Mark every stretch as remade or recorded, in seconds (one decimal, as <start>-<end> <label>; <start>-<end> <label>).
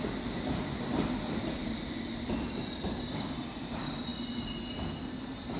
0.0-5.6 recorded